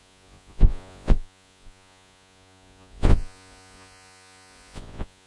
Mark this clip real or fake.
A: fake